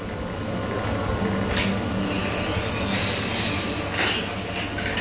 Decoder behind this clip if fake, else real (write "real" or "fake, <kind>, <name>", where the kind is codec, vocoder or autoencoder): real